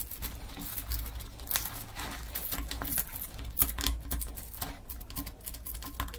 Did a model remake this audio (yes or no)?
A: no